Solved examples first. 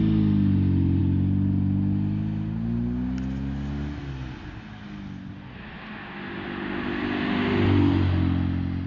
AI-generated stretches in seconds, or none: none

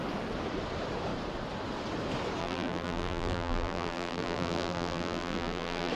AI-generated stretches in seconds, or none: 2.4-5.9 (vocoder, BigVGAN v2)

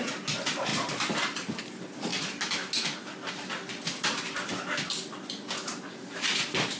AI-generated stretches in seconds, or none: 0.0-0.7 (vocoder, BigVGAN v2); 1.6-2.1; 3.3-6.8

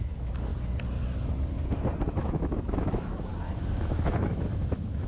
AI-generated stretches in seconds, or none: 0.0-0.5 (autoencoder, DAC-VAE); 2.1-3.3; 4.0-5.1

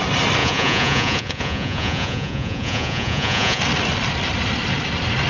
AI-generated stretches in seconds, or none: 0.4-3.6 (vocoder, Vocos)

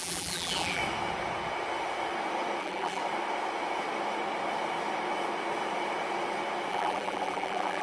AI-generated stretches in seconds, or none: 0.0-0.8 (vocoder, BigVGAN v2); 2.6-3.0; 6.7-7.8

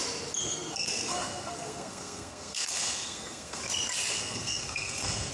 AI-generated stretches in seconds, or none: 0.4-3.6 (codec, SNAC); 4.1-5.3

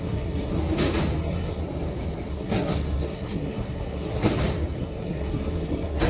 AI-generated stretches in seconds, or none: 0.0-0.6 (codec, SNAC); 1.2-1.6; 2.3-4.3; 4.8-6.1